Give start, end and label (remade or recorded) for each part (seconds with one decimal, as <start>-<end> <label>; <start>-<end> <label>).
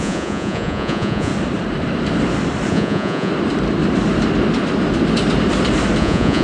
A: 0.0-1.3 remade; 1.3-2.7 recorded; 2.7-3.3 remade; 3.3-6.0 recorded; 6.0-6.4 remade